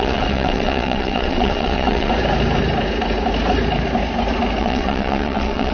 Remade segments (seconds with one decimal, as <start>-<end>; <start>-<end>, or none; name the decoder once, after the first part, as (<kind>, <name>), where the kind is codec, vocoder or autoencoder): 0.0-2.1 (vocoder, WaveNeXt); 4.6-5.7